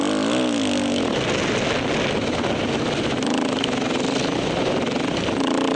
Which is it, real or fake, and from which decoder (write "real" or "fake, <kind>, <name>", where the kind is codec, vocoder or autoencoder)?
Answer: real